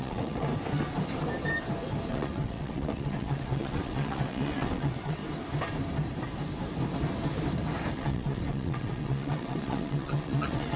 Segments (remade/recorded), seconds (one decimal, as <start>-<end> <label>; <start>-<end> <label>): 0.0-0.5 remade; 0.5-2.1 recorded; 2.1-5.2 remade; 5.2-7.9 recorded; 7.9-10.8 remade